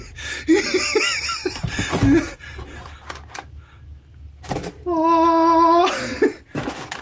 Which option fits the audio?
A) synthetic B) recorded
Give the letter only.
B